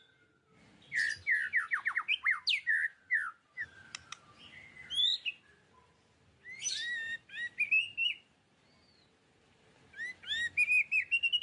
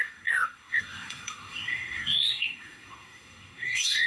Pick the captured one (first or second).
first